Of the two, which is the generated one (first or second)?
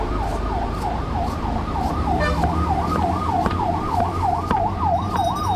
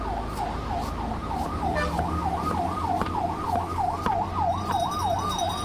first